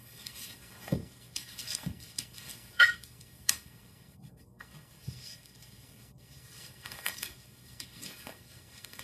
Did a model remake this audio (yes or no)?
yes